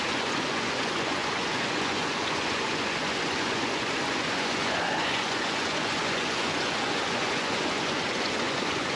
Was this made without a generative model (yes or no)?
no